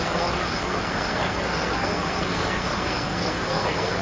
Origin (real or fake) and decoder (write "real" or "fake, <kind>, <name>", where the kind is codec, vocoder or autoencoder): fake, codec, SNAC